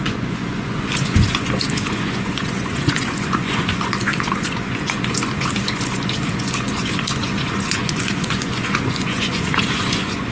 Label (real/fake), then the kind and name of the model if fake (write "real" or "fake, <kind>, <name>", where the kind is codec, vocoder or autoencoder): fake, vocoder, Vocos